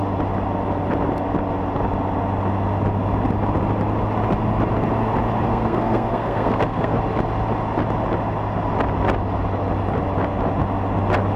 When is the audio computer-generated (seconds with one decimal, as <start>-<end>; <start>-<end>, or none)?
5.5-7.0